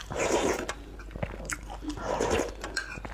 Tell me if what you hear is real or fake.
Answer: real